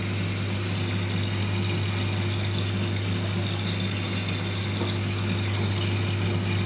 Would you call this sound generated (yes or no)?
no